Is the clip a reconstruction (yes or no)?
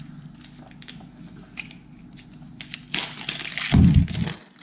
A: no